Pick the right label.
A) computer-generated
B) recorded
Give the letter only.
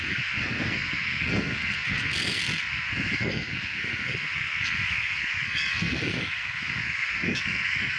A